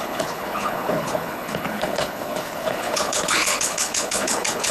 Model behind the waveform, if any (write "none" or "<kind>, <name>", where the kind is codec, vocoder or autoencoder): codec, HILCodec